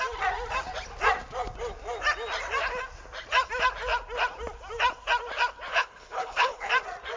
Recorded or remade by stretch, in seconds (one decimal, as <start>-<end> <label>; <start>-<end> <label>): 0.0-5.7 recorded; 5.7-6.7 remade; 6.7-7.2 recorded